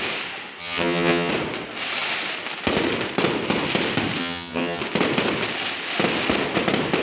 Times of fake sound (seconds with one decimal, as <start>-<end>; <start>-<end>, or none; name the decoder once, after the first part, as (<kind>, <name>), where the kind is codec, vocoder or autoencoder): 0.6-1.3 (vocoder, HiFi-GAN); 4.2-4.8

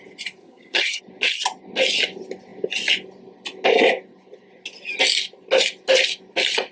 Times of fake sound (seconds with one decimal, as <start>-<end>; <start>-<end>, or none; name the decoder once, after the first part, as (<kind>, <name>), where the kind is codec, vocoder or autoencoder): 0.4-1.0 (vocoder, HiFi-GAN)

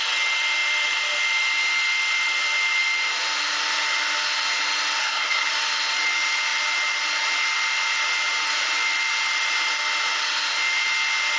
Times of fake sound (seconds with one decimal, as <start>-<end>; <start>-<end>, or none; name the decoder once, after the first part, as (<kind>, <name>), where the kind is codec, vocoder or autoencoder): 5.0-5.5 (codec, SNAC)

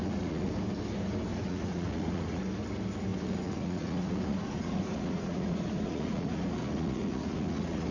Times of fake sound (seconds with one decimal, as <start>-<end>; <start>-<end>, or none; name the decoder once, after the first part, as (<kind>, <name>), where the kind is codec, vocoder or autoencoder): 0.0-0.5 (vocoder, Vocos); 1.3-2.4; 3.1-7.9

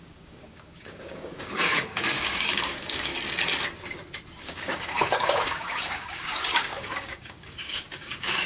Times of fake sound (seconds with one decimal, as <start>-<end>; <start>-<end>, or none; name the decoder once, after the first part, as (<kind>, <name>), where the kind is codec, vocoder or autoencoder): 0.0-3.1 (codec, DAC); 4.4-8.5

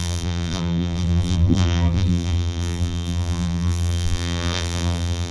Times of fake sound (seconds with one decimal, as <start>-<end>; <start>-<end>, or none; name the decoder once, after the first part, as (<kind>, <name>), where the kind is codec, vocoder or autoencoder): 0.0-5.3 (vocoder, BigVGAN v2)